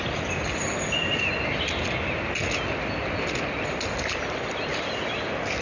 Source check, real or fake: real